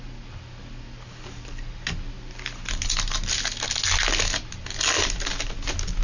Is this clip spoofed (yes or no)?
no